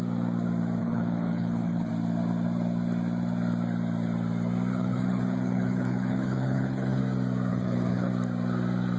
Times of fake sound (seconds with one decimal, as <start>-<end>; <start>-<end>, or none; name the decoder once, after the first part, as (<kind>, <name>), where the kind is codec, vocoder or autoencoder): 0.8-1.9 (codec, HILCodec); 4.7-7.0; 7.5-8.1